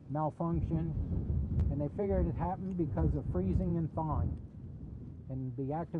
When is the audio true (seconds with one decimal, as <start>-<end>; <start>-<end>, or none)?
0.0-0.7; 1.4-2.0; 3.7-6.0

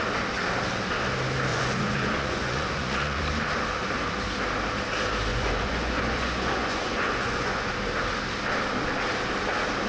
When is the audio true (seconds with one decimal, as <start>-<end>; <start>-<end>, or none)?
0.0-1.5; 3.2-5.3; 7.7-9.9

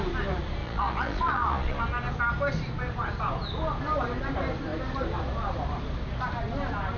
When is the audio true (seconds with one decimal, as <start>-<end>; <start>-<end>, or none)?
0.0-0.6; 1.8-7.0

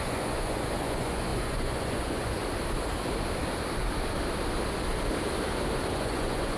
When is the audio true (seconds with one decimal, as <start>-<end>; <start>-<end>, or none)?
2.4-5.9

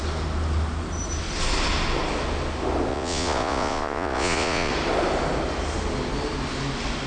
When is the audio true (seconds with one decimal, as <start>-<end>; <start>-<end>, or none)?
0.0-2.9; 4.7-7.1

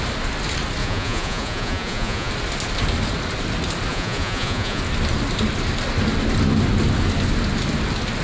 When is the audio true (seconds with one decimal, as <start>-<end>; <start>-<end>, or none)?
0.0-0.8; 2.3-3.9; 4.8-8.2

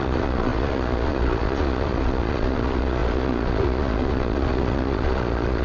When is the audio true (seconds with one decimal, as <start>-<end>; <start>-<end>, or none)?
none

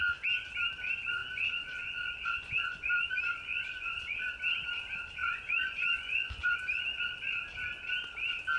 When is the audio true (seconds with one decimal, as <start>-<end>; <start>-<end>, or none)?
0.0-1.2; 4.3-5.2; 6.6-8.6